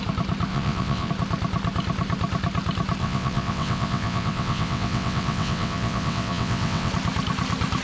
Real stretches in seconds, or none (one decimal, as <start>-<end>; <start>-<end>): 0.0-0.5; 1.1-3.0; 6.9-7.8